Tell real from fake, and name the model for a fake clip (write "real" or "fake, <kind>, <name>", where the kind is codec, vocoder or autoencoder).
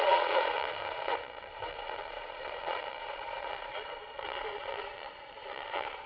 fake, vocoder, Vocos